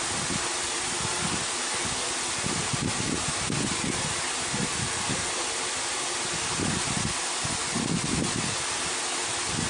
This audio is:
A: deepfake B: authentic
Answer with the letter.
B